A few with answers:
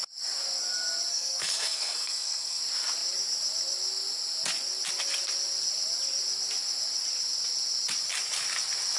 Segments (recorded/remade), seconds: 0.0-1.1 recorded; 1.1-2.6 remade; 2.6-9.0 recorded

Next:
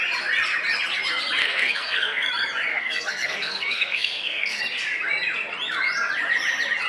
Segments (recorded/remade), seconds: 0.0-1.4 recorded; 1.4-2.3 remade; 2.3-2.7 recorded; 2.7-4.6 remade; 4.6-6.9 recorded

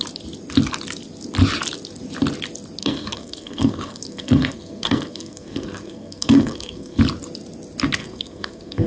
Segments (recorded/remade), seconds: 0.0-2.8 recorded; 2.8-7.0 remade; 7.0-8.0 recorded; 8.0-8.9 remade

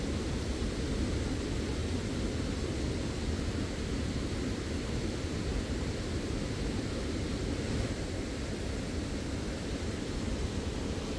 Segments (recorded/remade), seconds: 0.0-11.2 recorded